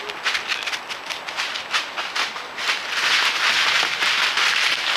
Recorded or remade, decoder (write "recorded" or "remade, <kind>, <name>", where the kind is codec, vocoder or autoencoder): recorded